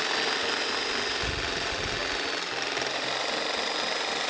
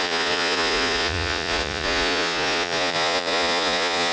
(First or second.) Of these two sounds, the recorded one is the first